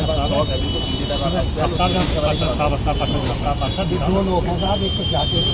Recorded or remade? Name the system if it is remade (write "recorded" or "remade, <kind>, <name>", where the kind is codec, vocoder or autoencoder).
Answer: recorded